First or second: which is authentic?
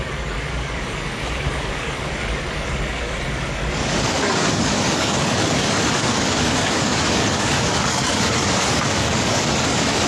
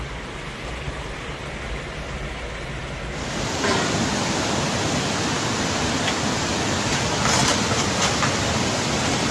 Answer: second